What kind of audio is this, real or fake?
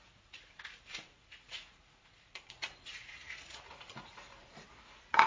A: fake